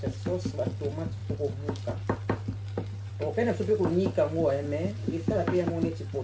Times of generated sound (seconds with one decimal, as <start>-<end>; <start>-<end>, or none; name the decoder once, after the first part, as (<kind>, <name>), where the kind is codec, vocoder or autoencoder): 5.0-5.7 (codec, DAC)